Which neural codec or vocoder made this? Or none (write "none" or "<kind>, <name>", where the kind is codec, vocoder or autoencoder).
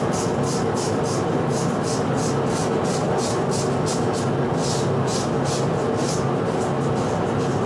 none